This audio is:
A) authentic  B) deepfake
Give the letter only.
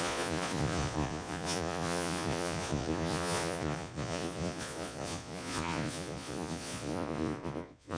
B